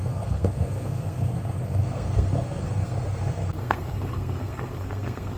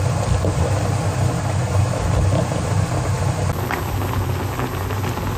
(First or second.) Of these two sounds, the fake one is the first